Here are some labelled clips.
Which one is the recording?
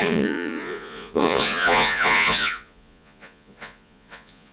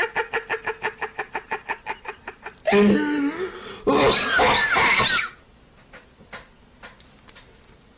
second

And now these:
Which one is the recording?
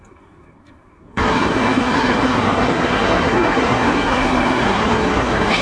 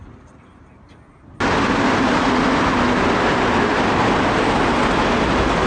second